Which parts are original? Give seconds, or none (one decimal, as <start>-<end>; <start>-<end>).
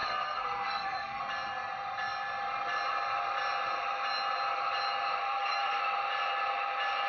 1.2-5.2; 5.8-7.1